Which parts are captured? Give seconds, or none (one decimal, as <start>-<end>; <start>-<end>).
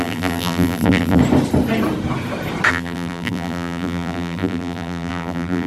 1.2-2.7